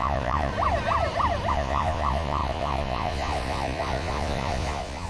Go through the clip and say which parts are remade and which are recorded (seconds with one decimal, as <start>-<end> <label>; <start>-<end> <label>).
0.0-0.5 remade; 0.5-1.5 recorded; 1.5-5.1 remade